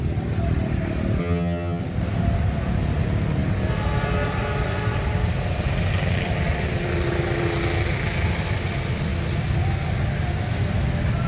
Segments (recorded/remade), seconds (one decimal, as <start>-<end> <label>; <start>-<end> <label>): 0.0-1.2 recorded; 1.2-1.8 remade; 1.8-11.3 recorded